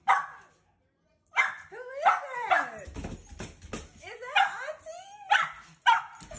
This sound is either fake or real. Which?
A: real